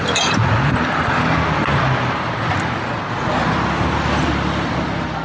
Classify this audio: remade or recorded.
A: recorded